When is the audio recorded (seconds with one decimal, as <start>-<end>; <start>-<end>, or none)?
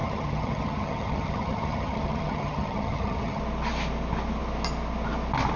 3.4-5.6